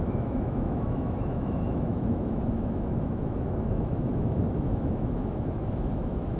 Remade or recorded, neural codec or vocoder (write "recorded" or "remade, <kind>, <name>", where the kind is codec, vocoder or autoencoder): remade, autoencoder, DAC-VAE